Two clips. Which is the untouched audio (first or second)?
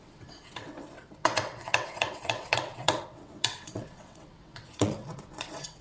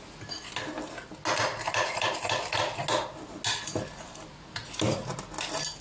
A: second